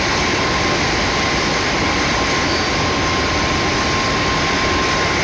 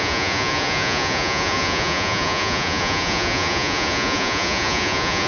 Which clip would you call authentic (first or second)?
first